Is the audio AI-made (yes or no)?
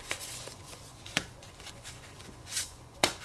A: yes